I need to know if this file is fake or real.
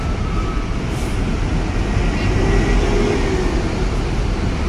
real